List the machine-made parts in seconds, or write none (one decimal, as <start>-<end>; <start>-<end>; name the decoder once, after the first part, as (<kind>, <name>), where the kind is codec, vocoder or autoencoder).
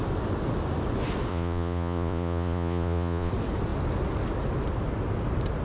1.3-3.3 (vocoder, Vocos)